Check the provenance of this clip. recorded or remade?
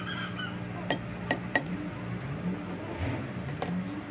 recorded